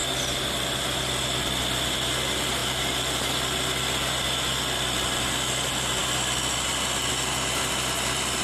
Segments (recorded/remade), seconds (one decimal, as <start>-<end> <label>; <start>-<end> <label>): 0.0-2.6 recorded; 2.6-3.3 remade; 3.3-8.4 recorded